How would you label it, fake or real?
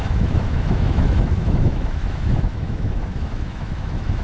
fake